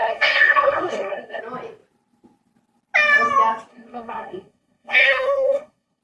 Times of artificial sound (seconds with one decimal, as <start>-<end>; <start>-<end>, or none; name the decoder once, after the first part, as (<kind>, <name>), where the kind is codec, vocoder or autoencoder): 0.0-1.4 (codec, SNAC); 3.7-6.0